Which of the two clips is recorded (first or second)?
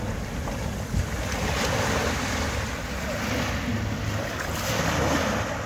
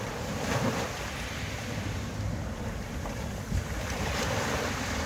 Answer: first